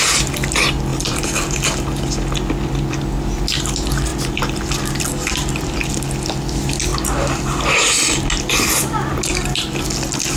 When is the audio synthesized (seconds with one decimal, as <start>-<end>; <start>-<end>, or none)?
0.9-1.5; 4.1-5.9